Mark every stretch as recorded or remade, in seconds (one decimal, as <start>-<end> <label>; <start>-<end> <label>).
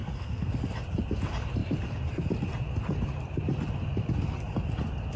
0.0-0.6 remade; 0.6-5.2 recorded